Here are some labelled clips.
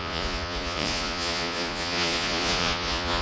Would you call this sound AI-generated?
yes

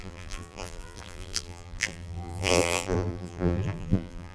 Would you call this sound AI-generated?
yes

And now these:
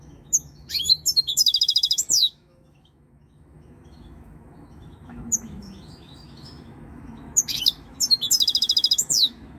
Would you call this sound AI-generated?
yes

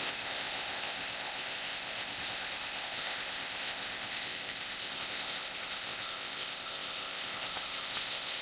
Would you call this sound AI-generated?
yes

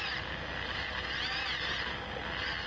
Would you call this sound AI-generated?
no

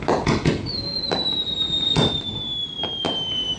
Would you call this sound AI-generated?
no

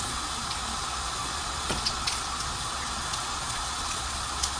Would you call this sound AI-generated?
yes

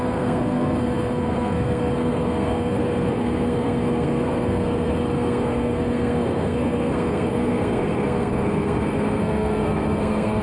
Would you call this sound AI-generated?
yes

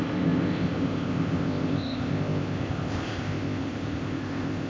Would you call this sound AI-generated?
yes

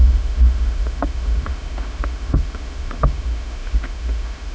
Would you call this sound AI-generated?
yes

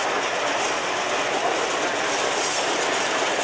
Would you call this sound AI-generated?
no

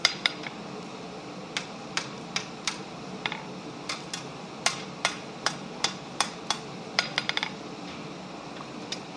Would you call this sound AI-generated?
yes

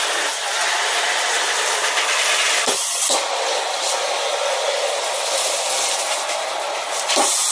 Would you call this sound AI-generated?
no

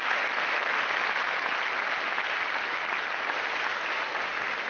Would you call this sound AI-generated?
no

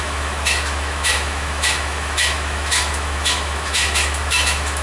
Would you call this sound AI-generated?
yes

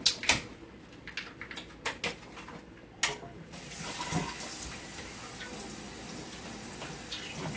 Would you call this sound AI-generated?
no